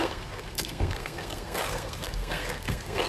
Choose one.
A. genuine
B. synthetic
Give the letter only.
B